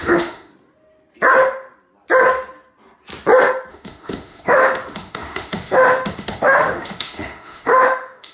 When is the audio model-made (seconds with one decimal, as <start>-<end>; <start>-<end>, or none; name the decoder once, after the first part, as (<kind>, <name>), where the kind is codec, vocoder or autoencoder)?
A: 0.0-0.5 (autoencoder, DAC-VAE); 3.7-8.3